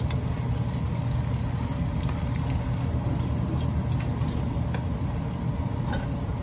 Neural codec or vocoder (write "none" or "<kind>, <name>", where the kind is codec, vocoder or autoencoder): none